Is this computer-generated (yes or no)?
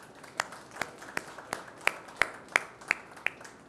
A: no